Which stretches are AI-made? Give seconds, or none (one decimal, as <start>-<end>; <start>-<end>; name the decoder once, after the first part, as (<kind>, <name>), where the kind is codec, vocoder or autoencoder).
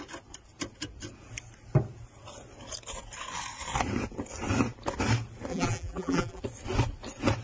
5.5-6.4 (vocoder, BigVGAN v2)